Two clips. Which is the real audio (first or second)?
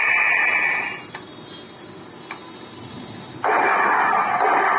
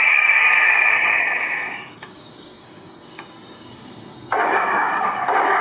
first